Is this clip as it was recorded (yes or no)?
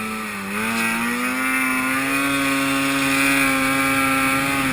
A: yes